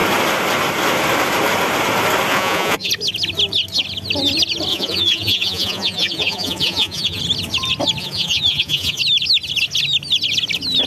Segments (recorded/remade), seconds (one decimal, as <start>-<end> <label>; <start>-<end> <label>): 0.0-2.3 recorded; 2.3-2.9 remade; 2.9-4.7 recorded; 4.7-7.2 remade; 7.2-8.0 recorded; 8.0-9.0 remade; 9.0-10.9 recorded